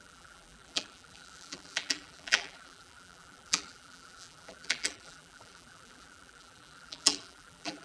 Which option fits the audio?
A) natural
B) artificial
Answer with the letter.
B